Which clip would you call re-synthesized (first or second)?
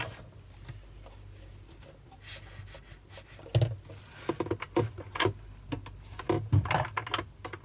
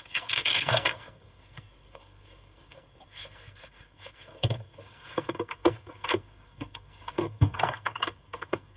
second